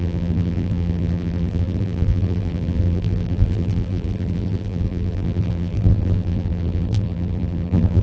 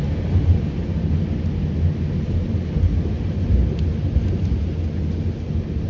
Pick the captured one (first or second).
second